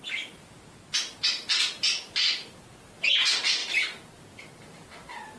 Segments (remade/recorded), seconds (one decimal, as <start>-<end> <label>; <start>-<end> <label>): 0.0-5.4 recorded